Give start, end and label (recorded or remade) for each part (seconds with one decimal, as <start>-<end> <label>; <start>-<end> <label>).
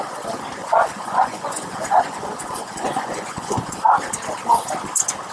0.0-0.6 recorded; 0.6-3.8 remade; 3.8-5.3 recorded